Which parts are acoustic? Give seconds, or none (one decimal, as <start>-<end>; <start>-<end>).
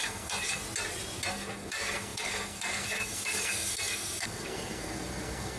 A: 0.6-1.3